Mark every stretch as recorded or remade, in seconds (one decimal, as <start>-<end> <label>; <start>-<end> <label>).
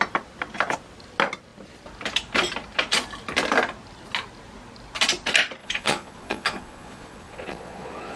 0.0-5.6 recorded; 5.6-8.2 remade